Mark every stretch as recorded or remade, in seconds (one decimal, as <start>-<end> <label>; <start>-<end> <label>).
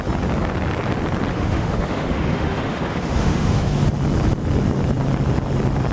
0.0-1.3 recorded; 1.3-3.9 remade; 3.9-5.9 recorded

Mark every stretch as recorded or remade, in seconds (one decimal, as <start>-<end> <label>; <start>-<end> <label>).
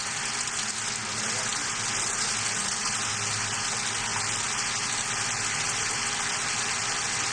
0.0-7.3 recorded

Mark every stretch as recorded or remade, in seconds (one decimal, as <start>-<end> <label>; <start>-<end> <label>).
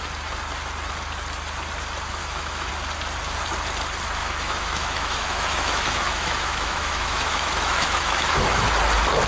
0.0-2.2 recorded; 2.2-2.7 remade; 2.7-4.2 recorded; 4.2-8.7 remade; 8.7-9.3 recorded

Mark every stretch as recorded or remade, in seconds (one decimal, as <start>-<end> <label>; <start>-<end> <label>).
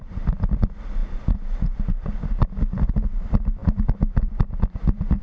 0.0-5.2 recorded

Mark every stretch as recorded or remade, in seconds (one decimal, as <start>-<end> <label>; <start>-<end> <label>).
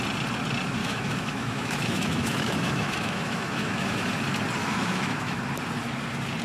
0.0-0.8 recorded; 0.8-4.1 remade; 4.1-4.6 recorded; 4.6-5.4 remade; 5.4-6.4 recorded